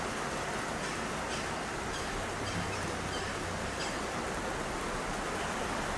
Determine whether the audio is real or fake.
real